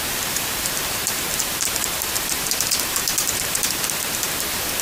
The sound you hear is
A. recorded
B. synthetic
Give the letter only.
B